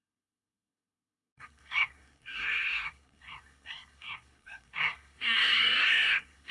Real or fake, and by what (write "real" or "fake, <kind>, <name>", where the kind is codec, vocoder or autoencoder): fake, codec, SNAC